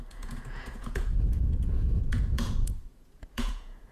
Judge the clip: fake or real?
fake